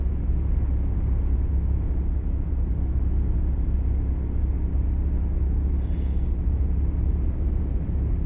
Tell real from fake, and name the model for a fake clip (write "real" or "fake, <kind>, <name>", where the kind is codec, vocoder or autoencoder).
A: real